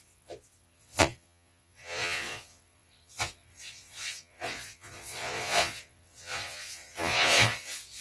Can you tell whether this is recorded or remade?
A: remade